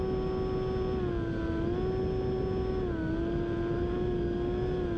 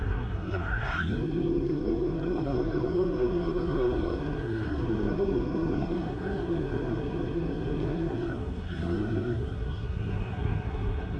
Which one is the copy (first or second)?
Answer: second